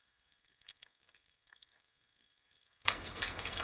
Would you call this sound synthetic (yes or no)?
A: yes